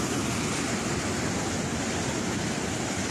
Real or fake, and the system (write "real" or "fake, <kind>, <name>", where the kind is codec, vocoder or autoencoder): real